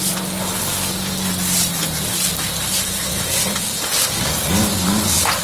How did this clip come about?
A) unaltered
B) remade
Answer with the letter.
A